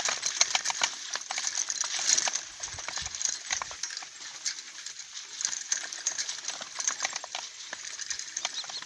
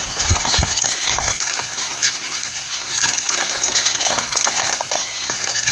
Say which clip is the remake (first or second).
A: second